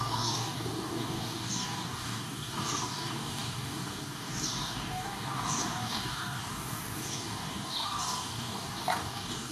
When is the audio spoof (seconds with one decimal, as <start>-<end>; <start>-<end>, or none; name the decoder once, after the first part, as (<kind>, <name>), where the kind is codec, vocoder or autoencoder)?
0.0-9.5 (codec, DAC)